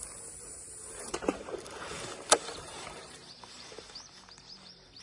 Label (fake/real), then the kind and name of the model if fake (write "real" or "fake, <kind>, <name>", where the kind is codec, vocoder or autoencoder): fake, vocoder, BigVGAN v2